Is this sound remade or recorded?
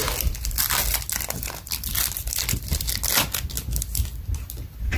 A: recorded